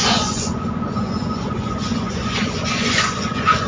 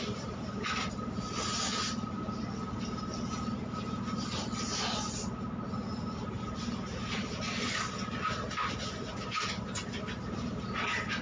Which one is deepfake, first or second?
first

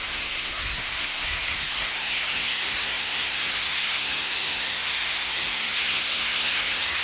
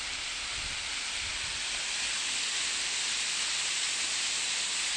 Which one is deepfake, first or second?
first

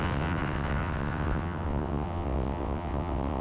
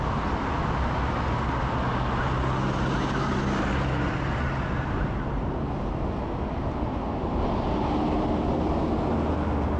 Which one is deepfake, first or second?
first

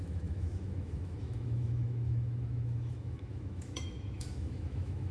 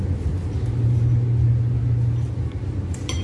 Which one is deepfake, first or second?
first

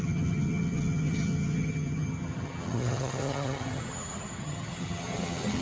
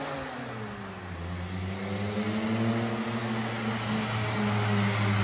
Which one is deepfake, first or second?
first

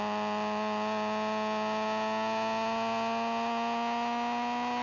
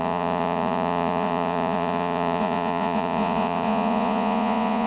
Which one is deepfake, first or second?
second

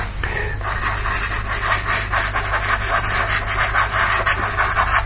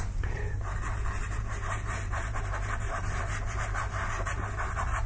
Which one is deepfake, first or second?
second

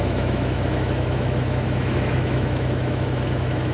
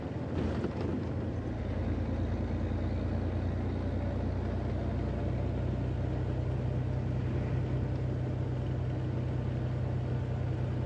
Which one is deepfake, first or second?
first